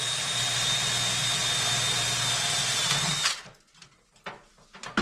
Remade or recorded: recorded